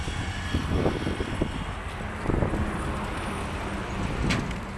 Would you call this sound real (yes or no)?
yes